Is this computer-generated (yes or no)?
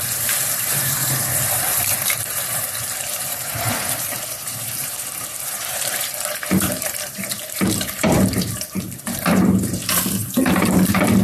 yes